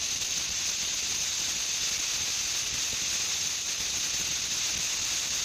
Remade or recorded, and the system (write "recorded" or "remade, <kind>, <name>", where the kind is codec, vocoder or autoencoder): recorded